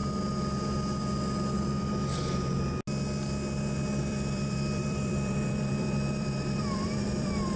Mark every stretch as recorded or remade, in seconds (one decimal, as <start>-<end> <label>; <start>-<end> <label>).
0.0-4.0 recorded; 4.0-7.6 remade